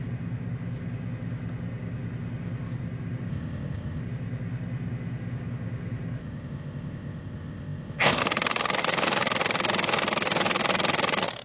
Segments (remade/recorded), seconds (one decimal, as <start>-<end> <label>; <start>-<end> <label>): 0.0-3.3 recorded; 3.3-4.0 remade; 4.0-6.2 recorded; 6.2-8.2 remade; 8.2-11.4 recorded